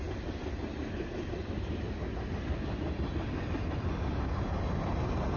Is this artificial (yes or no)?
no